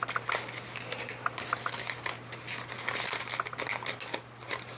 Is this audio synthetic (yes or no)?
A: no